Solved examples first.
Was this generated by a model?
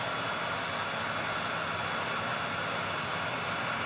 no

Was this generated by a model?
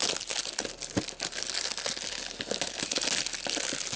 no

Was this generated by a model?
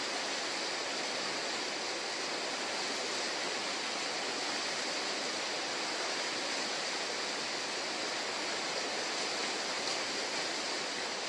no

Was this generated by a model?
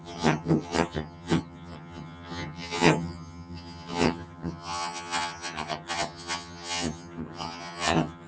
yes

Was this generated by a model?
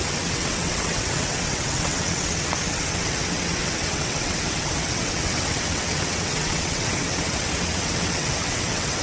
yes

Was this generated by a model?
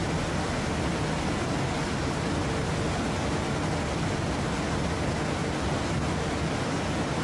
no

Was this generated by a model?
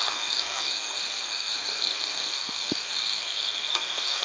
yes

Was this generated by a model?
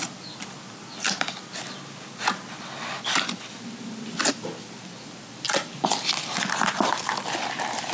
no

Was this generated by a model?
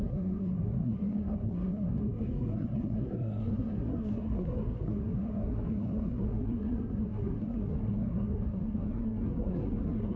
yes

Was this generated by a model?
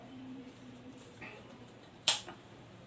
yes